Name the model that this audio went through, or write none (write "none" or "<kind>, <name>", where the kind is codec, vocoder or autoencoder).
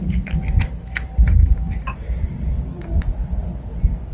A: none